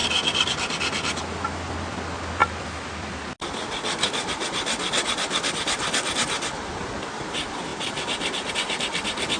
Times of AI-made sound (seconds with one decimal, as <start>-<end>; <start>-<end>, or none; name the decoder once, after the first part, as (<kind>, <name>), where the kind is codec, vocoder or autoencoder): none